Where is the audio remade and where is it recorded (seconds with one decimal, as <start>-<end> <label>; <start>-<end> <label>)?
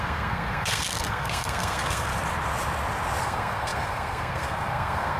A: 0.0-2.1 remade; 2.1-3.2 recorded; 3.2-5.2 remade